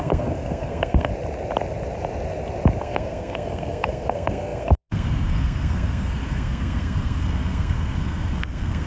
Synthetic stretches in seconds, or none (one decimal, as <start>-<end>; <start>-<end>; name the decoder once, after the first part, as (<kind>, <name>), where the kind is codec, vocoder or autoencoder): 0.0-1.1 (codec, SNAC); 2.8-8.9

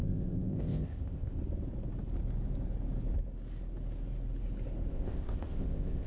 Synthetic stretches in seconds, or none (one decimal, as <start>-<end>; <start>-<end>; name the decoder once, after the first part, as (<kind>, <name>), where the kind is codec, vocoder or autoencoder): 0.0-1.4 (codec, ZipCodec); 4.9-6.1

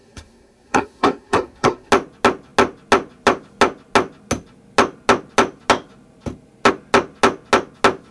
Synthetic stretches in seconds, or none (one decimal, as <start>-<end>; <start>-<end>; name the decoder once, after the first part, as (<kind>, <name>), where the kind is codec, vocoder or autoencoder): 0.0-1.9 (codec, SNAC)

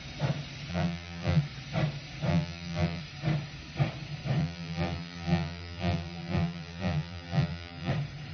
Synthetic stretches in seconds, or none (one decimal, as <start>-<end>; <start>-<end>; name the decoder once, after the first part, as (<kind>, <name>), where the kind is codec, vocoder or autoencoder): 0.7-1.4 (vocoder, BigVGAN v2); 2.3-3.0; 4.4-7.9

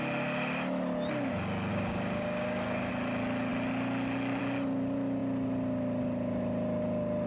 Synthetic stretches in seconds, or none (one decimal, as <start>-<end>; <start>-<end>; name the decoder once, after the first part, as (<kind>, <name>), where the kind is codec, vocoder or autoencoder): 1.7-2.9 (codec, DAC)

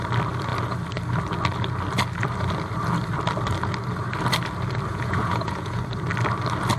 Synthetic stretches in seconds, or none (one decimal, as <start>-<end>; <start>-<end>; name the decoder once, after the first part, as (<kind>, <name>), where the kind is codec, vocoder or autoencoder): 4.9-5.8 (vocoder, Vocos)

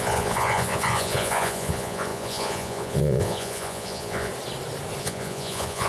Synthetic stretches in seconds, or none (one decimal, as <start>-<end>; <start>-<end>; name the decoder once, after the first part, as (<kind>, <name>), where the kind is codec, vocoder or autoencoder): 0.0-4.3 (vocoder, Vocos); 5.0-5.9

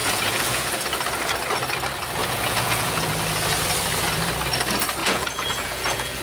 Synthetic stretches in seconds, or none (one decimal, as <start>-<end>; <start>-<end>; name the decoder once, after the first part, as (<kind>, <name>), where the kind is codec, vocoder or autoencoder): 0.0-0.7 (vocoder, Vocos); 2.2-3.1; 5.0-6.2